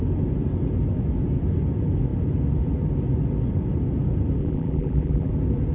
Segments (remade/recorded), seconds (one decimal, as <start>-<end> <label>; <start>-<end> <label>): 0.0-4.4 recorded; 4.4-5.3 remade; 5.3-5.7 recorded